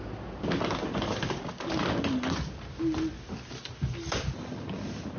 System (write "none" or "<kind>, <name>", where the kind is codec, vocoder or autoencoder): none